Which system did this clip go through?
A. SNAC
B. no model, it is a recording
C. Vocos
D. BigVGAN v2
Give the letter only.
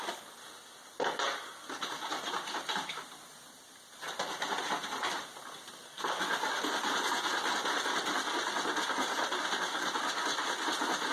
B